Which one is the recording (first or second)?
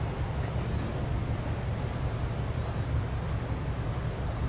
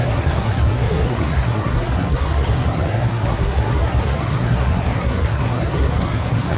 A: first